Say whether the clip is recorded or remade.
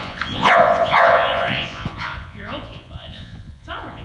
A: remade